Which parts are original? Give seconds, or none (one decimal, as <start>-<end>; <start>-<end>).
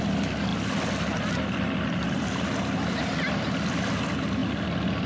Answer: 0.0-0.5; 3.5-5.1